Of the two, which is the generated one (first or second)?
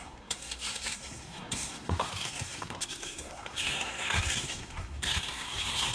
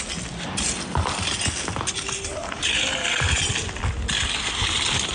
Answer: first